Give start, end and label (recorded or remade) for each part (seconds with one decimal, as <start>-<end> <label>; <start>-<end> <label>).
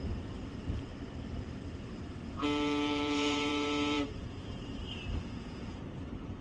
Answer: 0.0-0.9 remade; 0.9-1.5 recorded; 1.5-6.4 remade